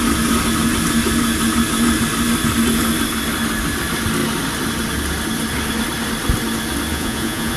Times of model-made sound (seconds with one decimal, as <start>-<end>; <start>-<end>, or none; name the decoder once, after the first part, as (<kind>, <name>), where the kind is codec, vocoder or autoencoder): 6.9-7.6 (vocoder, Vocos)